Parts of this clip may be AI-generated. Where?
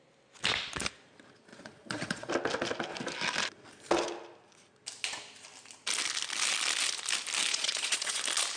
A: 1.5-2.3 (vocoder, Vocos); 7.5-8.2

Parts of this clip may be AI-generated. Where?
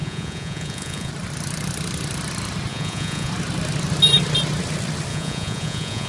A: 0.0-1.1 (vocoder, Vocos); 2.7-3.3; 5.1-6.1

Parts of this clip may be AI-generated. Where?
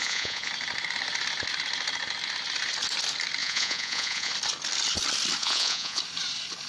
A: 0.0-0.5 (vocoder, Vocos); 3.4-4.3; 5.4-6.0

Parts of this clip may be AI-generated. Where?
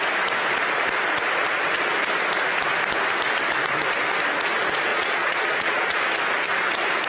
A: 4.9-6.0 (vocoder, Vocos)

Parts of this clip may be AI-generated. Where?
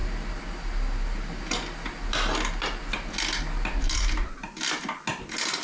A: none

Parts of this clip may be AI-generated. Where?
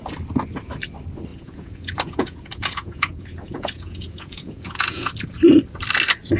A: 1.3-5.1 (vocoder, Vocos)